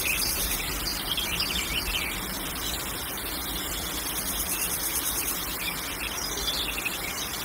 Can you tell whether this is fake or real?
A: fake